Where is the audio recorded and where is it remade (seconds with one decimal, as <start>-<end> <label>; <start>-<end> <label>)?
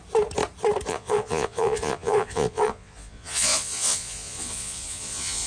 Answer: 0.0-0.9 recorded; 0.9-5.5 remade